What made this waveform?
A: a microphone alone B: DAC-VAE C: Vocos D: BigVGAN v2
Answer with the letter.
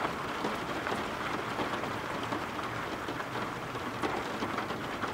A